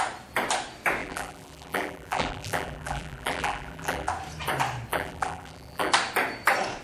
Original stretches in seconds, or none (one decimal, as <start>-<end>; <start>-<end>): 0.0-1.0; 4.1-4.9; 5.9-6.8

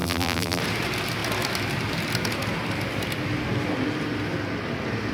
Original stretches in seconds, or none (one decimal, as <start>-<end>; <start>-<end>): 0.6-5.1

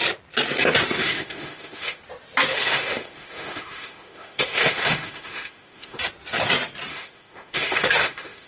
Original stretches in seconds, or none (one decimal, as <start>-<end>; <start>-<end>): 0.0-1.0; 2.0-2.5; 6.0-6.9

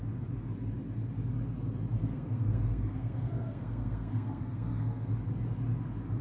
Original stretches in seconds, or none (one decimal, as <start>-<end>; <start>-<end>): 0.0-2.0; 5.1-6.2